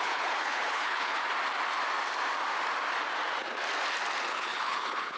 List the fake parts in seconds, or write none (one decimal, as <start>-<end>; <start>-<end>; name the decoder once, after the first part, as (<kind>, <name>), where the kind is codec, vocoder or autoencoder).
0.0-1.2 (codec, HILCodec); 4.3-5.2